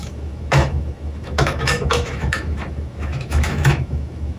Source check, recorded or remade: remade